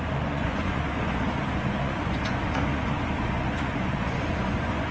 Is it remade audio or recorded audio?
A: remade